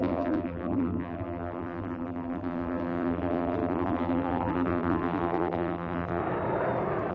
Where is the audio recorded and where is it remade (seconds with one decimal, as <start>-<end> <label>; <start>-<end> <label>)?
0.0-6.2 remade; 6.2-7.1 recorded